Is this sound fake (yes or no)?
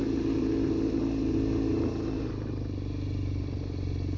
no